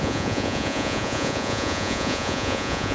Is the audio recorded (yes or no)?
no